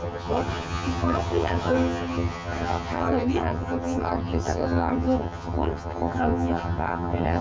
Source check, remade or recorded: remade